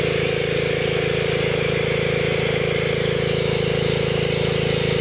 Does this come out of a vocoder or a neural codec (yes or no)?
no